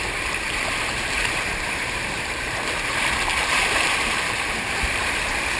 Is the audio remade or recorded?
remade